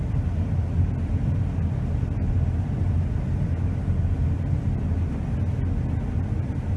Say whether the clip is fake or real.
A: real